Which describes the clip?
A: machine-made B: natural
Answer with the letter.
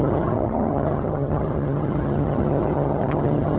A